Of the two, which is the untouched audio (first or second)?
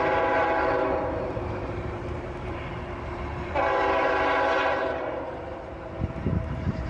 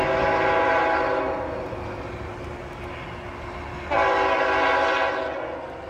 second